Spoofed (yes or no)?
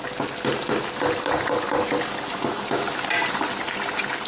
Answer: no